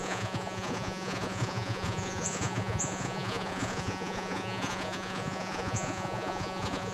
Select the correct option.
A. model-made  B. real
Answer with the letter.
A